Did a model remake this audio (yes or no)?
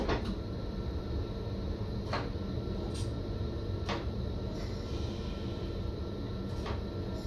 no